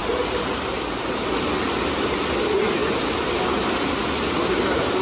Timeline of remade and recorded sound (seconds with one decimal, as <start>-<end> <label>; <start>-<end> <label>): 0.0-5.0 recorded